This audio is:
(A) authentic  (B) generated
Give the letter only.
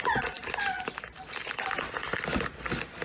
A